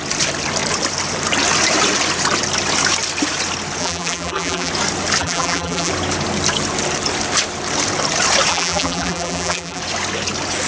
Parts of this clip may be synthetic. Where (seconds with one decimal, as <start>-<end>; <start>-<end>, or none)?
3.8-4.7; 5.2-5.9; 8.5-9.8